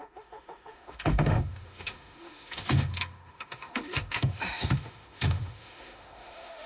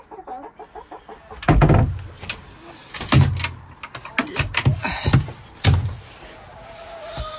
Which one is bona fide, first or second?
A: second